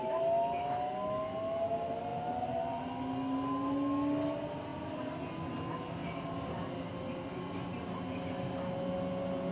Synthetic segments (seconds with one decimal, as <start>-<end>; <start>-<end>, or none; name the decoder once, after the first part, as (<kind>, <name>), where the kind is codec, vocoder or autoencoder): 2.1-2.9 (vocoder, BigVGAN v2)